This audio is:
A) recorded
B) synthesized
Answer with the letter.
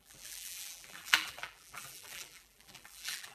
B